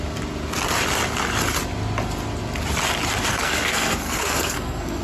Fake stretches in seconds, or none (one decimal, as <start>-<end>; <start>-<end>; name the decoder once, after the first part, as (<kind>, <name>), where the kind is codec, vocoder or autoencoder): 3.3-5.0 (codec, SNAC)